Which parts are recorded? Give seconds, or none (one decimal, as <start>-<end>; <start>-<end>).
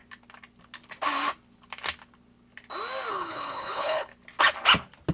0.0-3.1; 4.1-5.1